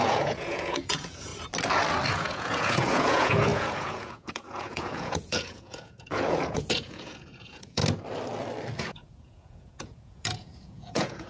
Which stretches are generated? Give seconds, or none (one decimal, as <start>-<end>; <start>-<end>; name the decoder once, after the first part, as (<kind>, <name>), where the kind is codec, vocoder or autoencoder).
0.0-1.3 (vocoder, Vocos); 2.1-7.8; 8.8-11.3